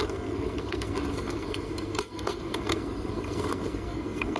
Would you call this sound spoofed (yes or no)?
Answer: yes